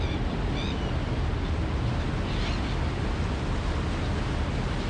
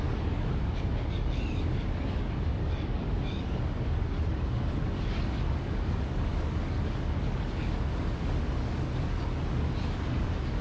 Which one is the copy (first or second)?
second